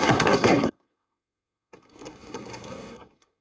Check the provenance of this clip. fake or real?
fake